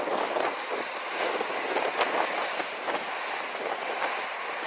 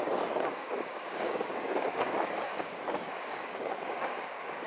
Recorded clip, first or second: first